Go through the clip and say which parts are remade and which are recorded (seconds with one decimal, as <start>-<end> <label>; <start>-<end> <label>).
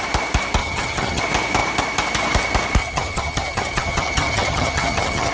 0.0-0.6 recorded; 0.6-1.2 remade; 1.2-2.8 recorded; 2.8-5.3 remade